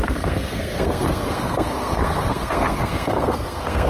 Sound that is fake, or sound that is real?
fake